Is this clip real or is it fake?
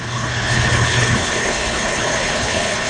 fake